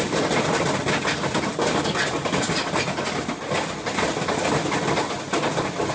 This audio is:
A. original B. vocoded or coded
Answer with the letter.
A